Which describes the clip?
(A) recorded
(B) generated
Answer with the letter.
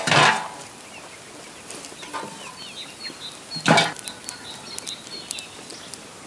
A